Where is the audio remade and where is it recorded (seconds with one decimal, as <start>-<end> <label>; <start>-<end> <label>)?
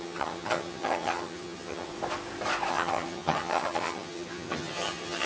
0.0-1.9 remade; 1.9-2.7 recorded; 2.7-5.3 remade